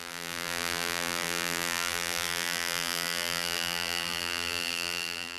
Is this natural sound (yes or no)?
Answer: no